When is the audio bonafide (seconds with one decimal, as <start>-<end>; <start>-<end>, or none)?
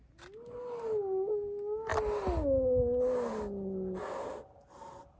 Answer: 0.0-5.2